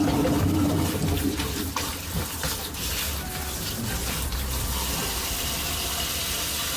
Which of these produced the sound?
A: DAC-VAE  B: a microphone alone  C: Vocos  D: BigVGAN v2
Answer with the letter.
B